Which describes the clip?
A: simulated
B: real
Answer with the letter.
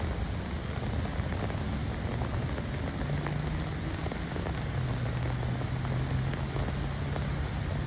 B